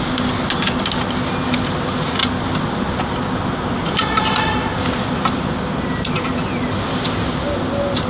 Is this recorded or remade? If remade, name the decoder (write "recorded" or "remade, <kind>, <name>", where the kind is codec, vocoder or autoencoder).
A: recorded